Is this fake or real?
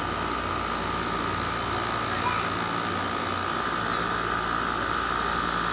real